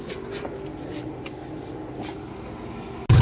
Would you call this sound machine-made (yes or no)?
no